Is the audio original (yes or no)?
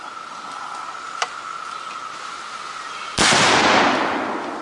yes